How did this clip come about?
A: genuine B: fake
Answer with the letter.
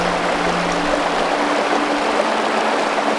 A